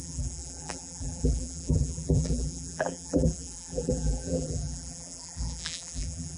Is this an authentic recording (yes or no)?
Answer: no